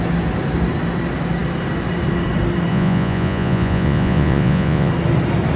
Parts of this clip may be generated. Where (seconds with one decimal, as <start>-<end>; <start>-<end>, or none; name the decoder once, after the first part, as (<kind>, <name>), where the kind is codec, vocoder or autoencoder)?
2.7-4.9 (vocoder, Vocos)